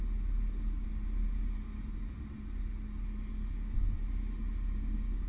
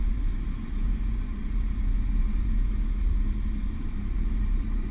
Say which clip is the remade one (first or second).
second